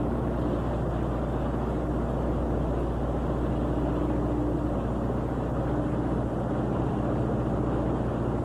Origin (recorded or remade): recorded